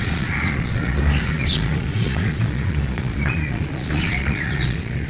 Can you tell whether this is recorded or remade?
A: remade